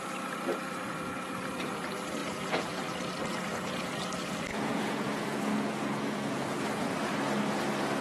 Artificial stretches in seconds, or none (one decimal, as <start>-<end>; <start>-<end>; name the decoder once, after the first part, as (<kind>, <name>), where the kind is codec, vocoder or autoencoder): 2.2-2.8 (vocoder, Vocos); 4.5-7.1

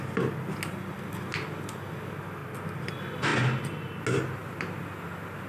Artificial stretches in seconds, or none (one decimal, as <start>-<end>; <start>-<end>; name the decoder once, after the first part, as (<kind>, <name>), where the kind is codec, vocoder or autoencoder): 2.4-2.9 (vocoder, BigVGAN v2); 3.3-4.0